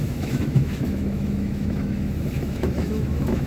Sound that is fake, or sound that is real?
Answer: fake